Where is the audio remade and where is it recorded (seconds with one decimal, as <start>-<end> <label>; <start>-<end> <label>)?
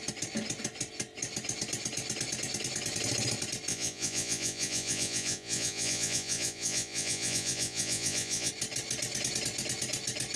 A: 0.0-3.7 recorded; 3.7-8.5 remade; 8.5-10.4 recorded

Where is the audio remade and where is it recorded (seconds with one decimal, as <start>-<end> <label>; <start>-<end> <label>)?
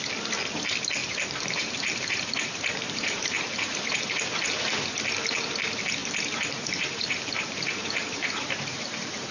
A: 0.0-1.0 recorded; 1.0-4.1 remade; 4.1-6.0 recorded; 6.0-9.3 remade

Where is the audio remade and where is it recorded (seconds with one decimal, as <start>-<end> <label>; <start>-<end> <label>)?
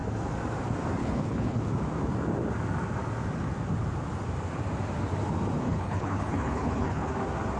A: 0.0-1.0 recorded; 1.0-1.6 remade; 1.6-5.6 recorded; 5.6-7.1 remade; 7.1-7.6 recorded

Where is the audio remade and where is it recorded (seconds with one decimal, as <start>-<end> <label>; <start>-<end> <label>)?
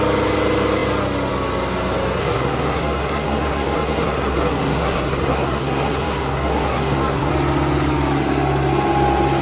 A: 0.0-2.2 recorded; 2.2-7.3 remade; 7.3-9.4 recorded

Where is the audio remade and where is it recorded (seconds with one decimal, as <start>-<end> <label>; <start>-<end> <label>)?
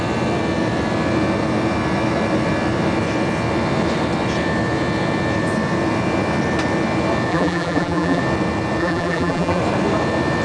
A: 0.0-7.3 recorded; 7.3-8.2 remade; 8.2-8.8 recorded; 8.8-9.6 remade; 9.6-10.4 recorded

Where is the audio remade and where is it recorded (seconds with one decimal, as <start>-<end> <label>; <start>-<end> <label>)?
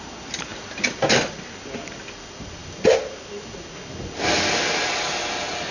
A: 0.0-5.7 recorded